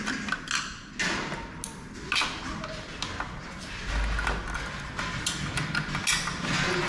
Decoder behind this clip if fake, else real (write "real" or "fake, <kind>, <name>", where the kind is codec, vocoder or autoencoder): real